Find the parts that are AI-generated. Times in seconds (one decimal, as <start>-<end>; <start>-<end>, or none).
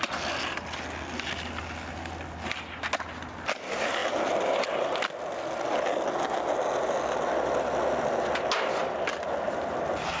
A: none